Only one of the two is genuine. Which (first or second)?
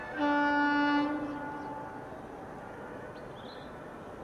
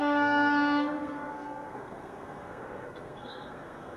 first